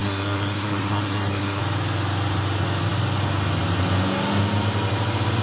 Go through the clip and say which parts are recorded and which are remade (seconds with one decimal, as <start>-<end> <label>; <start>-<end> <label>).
0.0-1.6 remade; 1.6-5.4 recorded